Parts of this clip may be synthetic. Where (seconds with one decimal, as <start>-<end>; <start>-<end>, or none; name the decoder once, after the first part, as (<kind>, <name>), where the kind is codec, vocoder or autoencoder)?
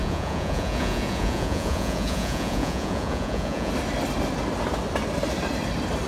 0.0-3.7 (vocoder, Vocos)